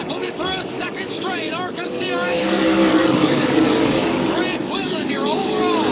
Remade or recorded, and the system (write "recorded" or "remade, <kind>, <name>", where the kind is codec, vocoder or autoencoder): remade, codec, DAC